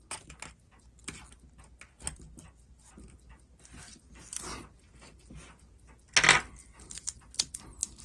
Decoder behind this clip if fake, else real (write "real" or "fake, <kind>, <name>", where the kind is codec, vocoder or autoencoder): real